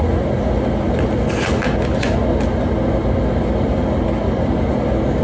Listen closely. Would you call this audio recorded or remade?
recorded